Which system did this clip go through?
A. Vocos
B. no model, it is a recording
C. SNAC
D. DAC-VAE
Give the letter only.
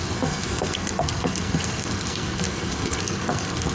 C